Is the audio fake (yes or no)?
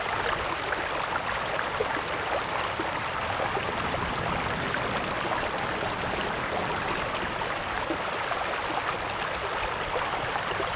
no